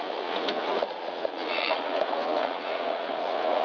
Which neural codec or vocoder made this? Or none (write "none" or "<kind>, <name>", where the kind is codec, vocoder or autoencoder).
vocoder, Vocos